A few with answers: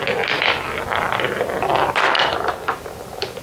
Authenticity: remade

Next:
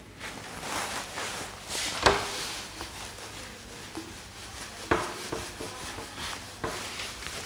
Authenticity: remade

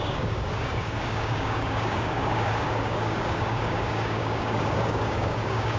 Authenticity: remade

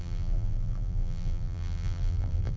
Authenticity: remade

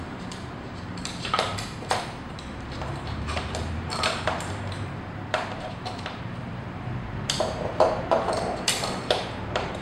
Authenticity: remade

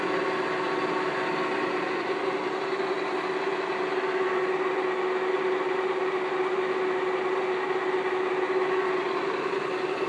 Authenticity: recorded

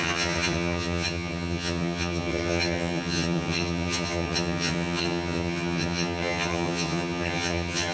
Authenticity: remade